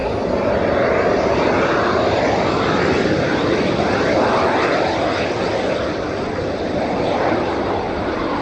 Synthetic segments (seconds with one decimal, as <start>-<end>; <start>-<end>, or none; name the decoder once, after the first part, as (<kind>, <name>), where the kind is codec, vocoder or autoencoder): none